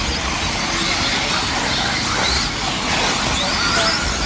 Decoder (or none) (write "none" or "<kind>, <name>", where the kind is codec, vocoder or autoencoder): none